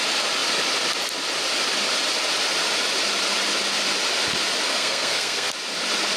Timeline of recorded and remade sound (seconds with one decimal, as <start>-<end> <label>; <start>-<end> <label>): 0.0-4.7 recorded; 4.7-5.5 remade; 5.5-6.2 recorded